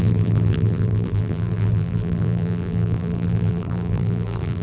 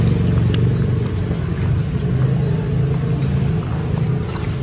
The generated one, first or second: first